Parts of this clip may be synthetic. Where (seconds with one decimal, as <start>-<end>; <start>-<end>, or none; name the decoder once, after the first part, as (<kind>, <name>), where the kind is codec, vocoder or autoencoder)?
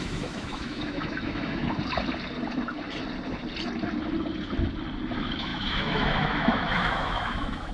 0.0-1.6 (autoencoder, DAC-VAE); 5.1-7.7